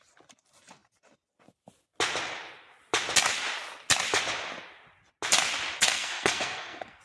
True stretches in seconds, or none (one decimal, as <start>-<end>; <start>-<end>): 0.0-5.8